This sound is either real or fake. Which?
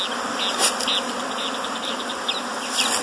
real